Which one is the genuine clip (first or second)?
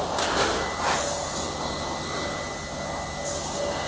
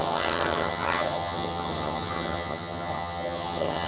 first